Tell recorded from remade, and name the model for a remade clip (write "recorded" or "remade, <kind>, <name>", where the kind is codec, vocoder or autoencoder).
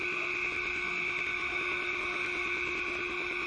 recorded